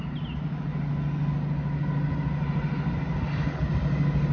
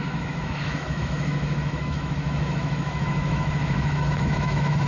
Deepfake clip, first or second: second